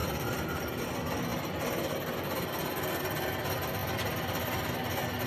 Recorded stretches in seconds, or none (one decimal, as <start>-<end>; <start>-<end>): 0.8-3.8; 4.7-5.3